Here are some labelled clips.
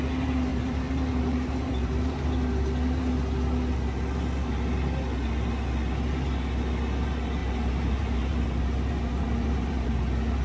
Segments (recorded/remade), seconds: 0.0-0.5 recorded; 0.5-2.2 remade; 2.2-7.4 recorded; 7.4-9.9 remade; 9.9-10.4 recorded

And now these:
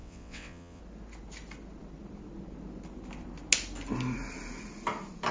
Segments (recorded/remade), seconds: 0.0-0.8 remade; 0.8-5.3 recorded

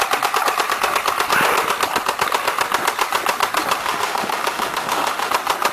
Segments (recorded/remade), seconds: 0.0-3.8 recorded; 3.8-5.3 remade; 5.3-5.7 recorded

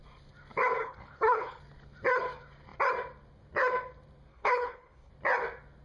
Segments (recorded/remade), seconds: 0.0-0.8 recorded; 0.8-1.6 remade; 1.6-4.3 recorded; 4.3-5.1 remade; 5.1-5.8 recorded

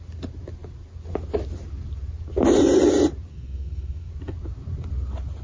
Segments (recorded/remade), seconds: 0.0-3.3 recorded; 3.3-4.1 remade; 4.1-5.4 recorded

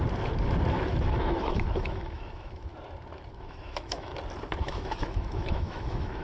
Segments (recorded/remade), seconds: 0.0-1.2 recorded; 1.2-2.7 remade; 2.7-3.3 recorded; 3.3-4.1 remade; 4.1-4.6 recorded; 4.6-6.2 remade

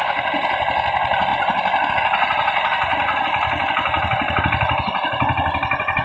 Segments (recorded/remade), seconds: 0.0-6.0 recorded